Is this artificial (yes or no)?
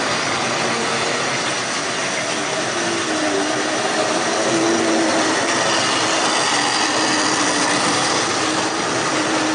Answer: no